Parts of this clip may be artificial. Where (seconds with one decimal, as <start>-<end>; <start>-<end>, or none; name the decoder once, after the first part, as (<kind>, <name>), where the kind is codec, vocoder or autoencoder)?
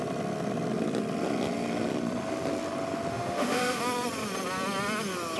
3.1-3.8 (autoencoder, DAC-VAE)